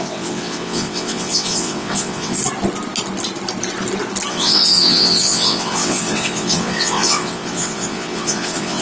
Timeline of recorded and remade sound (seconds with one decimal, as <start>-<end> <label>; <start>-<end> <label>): 0.0-2.4 remade; 2.4-4.3 recorded; 4.3-8.8 remade